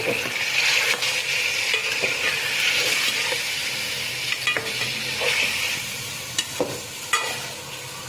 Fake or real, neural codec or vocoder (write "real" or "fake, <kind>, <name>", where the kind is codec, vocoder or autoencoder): real